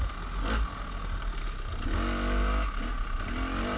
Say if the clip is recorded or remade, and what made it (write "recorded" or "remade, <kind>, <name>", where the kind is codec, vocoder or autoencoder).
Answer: recorded